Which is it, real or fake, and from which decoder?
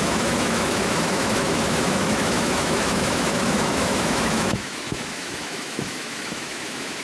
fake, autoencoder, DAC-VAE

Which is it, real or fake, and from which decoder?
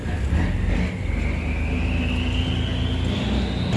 real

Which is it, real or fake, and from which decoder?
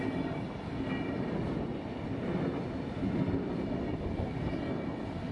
real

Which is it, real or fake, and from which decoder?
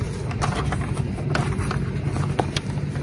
real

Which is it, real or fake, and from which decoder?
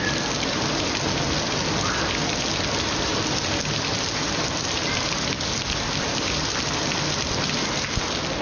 real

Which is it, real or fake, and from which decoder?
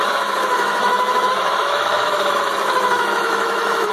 fake, autoencoder, DAC-VAE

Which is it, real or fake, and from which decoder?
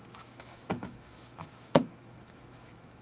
fake, autoencoder, DAC-VAE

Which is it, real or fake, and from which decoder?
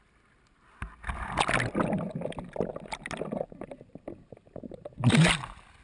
real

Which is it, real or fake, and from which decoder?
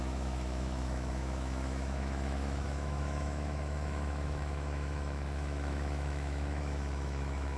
fake, autoencoder, DAC-VAE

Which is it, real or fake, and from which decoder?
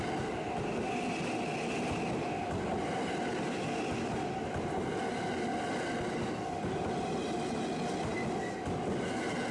real